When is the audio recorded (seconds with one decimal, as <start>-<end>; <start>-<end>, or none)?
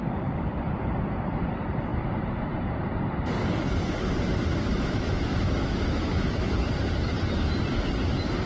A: 0.0-4.7; 6.5-8.5